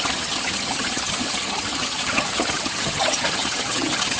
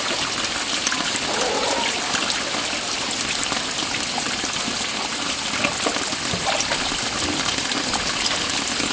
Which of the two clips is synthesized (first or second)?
first